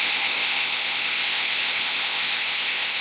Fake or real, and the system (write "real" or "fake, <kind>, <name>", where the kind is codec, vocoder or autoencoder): fake, codec, ZipCodec